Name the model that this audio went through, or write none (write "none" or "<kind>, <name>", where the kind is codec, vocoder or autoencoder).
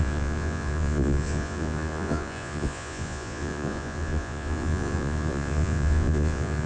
vocoder, Vocos